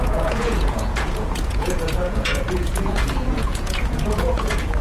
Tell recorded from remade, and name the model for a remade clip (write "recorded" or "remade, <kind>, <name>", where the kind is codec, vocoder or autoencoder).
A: remade, vocoder, Vocos